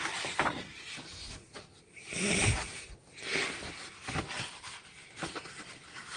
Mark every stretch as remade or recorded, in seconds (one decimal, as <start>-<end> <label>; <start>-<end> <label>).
0.0-6.2 recorded